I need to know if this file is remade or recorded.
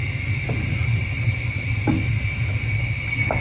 recorded